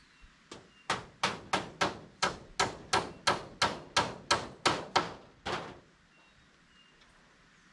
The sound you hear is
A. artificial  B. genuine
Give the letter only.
B